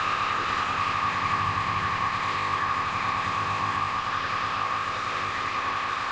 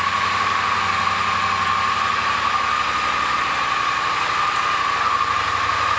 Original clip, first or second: second